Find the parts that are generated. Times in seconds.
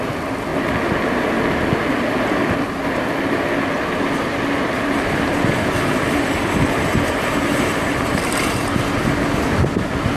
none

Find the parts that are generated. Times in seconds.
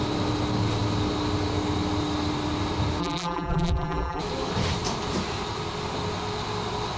3.0-4.2 (vocoder, BigVGAN v2)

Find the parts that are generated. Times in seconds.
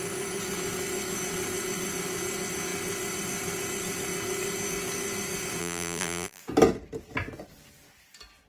5.6-6.4 (vocoder, BigVGAN v2)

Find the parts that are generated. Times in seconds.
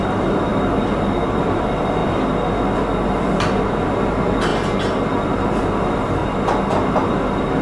0.0-2.0 (vocoder, BigVGAN v2); 3.1-4.5; 5.2-6.2; 6.9-7.6